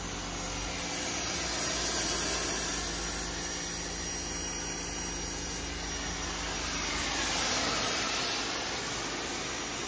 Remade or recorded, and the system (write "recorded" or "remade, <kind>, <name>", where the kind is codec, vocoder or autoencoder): recorded